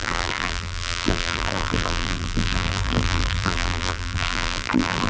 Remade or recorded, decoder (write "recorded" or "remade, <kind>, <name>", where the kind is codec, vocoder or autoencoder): remade, vocoder, BigVGAN v2